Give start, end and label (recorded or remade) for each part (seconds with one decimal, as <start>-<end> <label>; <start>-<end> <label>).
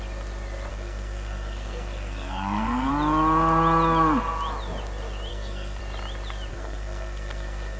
0.0-0.7 recorded; 0.7-2.9 remade; 2.9-5.3 recorded; 5.3-5.8 remade; 5.8-6.5 recorded; 6.5-7.8 remade